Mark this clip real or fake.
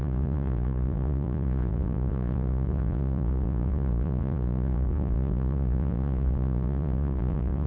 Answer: fake